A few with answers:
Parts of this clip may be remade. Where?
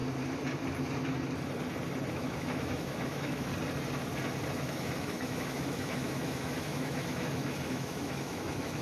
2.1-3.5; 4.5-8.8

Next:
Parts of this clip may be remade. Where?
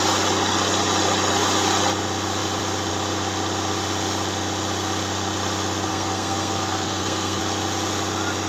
5.9-7.4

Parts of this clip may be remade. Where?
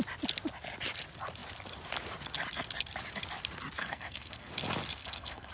3.8-4.5; 5.0-5.5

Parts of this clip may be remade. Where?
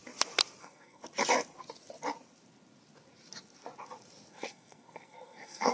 0.6-1.0; 4.3-5.7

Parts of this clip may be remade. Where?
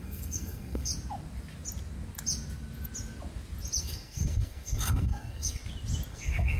0.0-0.9; 3.8-5.6; 6.1-6.6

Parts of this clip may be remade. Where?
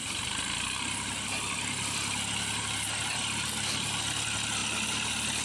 none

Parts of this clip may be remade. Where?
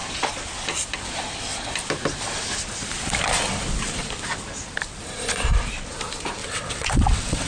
6.4-7.5